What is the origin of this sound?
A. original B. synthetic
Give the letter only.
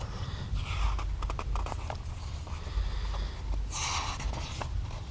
A